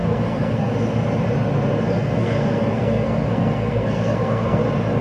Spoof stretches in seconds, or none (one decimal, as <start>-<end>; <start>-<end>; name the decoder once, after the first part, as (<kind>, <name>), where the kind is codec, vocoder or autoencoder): 0.0-0.7 (codec, SNAC); 2.0-4.6